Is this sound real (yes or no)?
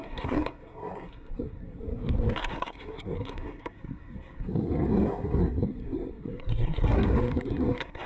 no